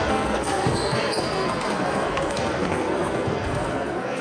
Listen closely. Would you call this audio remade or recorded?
remade